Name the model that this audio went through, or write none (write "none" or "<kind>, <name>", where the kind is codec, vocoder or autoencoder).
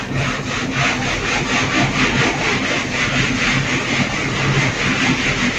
none